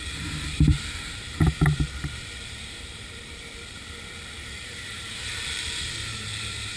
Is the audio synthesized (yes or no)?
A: yes